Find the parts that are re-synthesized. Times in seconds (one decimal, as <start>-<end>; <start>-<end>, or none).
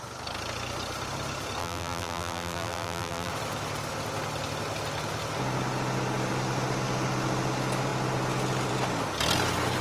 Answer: 1.6-3.3